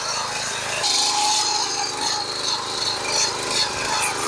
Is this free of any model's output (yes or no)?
no